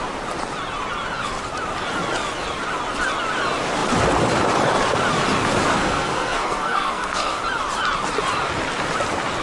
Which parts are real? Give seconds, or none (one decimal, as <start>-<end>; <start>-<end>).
0.0-5.7; 7.4-9.4